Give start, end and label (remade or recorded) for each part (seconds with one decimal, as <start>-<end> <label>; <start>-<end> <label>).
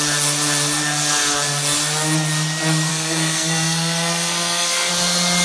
0.0-2.9 recorded; 2.9-4.9 remade; 4.9-5.4 recorded